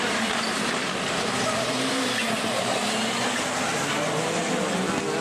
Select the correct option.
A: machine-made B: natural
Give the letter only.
B